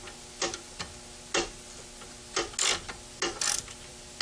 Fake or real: real